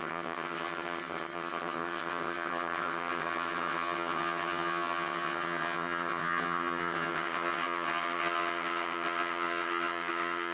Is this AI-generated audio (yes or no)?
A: yes